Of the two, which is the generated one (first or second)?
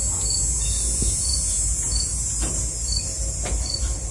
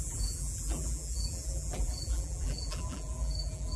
second